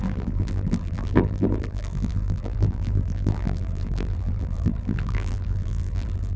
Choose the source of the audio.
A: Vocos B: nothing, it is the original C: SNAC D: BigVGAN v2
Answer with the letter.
D